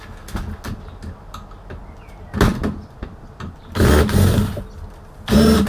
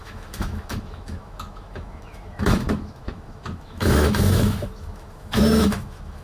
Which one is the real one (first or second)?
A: first